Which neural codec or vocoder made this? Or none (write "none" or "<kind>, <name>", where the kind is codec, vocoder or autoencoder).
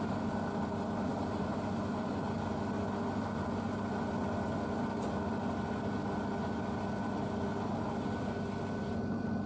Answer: none